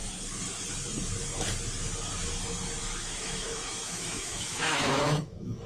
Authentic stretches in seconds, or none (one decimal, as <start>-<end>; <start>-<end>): 0.0-2.8